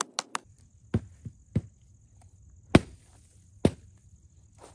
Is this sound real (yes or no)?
yes